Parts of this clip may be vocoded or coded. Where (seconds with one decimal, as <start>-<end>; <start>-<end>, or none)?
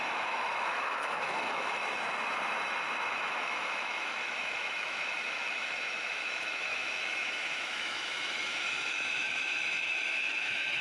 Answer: 0.0-1.8; 3.1-10.8